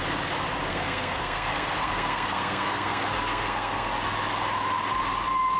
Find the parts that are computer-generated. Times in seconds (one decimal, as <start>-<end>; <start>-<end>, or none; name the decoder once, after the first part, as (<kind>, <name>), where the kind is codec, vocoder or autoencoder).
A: 0.7-3.9 (codec, SNAC)